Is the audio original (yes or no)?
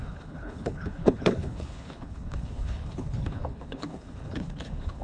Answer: no